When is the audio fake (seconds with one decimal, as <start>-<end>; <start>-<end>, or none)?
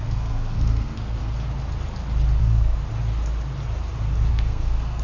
0.0-1.2; 2.4-2.8; 4.3-5.0